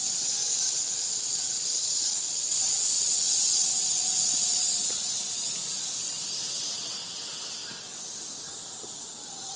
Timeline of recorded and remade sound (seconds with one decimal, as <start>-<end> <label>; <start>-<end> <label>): 0.0-7.6 remade; 7.6-8.5 recorded; 8.5-9.6 remade